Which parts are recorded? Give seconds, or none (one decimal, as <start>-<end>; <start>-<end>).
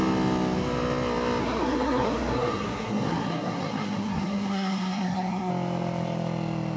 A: 0.0-1.4; 5.5-6.8